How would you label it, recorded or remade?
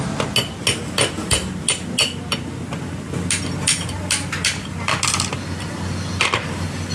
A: recorded